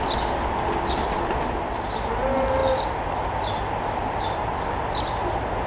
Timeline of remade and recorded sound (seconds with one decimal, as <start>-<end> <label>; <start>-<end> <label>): 0.0-5.7 recorded